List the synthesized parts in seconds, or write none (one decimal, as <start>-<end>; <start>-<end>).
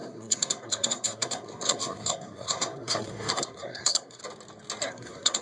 0.0-4.2; 4.9-5.4